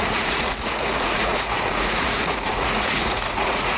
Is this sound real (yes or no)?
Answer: no